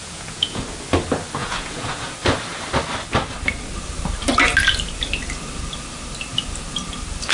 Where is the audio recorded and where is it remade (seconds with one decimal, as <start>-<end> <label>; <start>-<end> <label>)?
0.0-0.6 remade; 0.6-1.4 recorded; 1.4-2.1 remade; 2.1-7.3 recorded